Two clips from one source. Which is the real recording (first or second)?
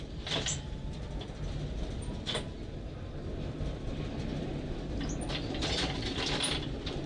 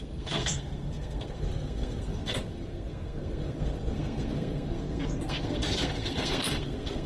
first